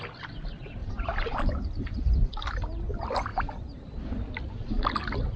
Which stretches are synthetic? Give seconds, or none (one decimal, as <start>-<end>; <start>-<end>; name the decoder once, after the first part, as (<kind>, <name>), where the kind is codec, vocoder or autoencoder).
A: none